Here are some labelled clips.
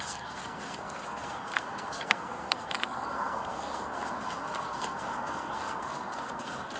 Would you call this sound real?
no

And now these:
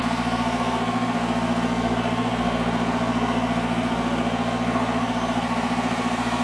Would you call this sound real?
no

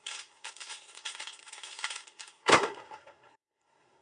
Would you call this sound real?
no